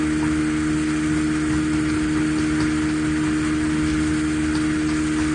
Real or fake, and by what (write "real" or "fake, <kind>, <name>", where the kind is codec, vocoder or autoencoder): real